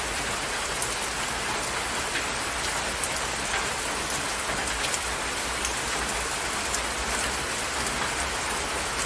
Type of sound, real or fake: real